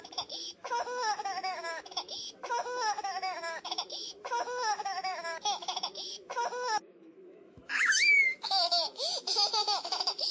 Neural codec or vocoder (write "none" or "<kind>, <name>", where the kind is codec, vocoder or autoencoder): autoencoder, DAC-VAE